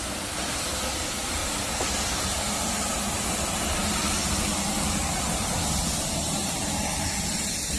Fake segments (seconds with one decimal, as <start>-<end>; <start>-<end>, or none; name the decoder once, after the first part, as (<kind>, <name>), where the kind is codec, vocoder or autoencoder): 0.0-1.4 (vocoder, BigVGAN v2); 5.1-6.6